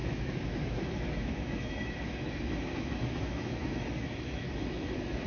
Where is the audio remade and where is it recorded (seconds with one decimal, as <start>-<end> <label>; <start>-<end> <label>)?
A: 0.0-5.3 remade